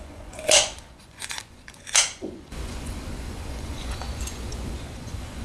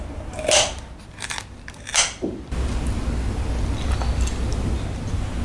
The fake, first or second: first